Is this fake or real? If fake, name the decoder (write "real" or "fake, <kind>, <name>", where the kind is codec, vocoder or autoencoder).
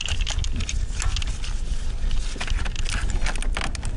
real